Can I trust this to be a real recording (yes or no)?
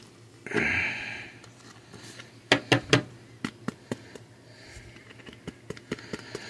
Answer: yes